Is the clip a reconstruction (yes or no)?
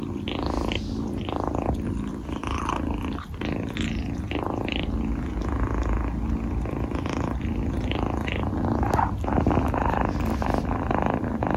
no